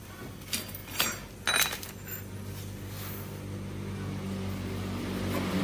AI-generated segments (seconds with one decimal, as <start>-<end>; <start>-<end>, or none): none